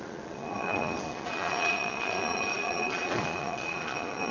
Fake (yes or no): yes